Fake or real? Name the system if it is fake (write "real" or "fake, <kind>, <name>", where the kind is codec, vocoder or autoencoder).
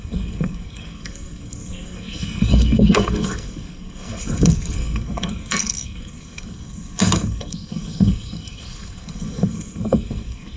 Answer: fake, codec, SNAC